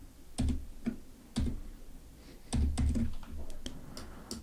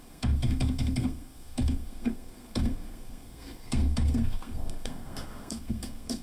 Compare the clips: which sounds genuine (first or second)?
first